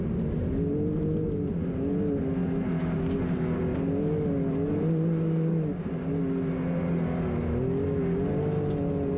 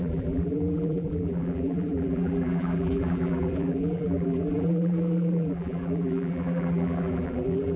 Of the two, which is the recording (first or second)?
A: first